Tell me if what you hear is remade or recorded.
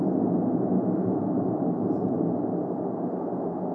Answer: recorded